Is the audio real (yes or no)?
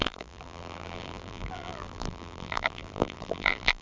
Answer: no